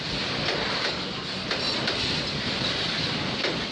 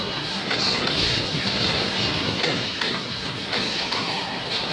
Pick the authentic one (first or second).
first